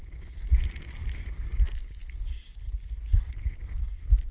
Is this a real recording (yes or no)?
yes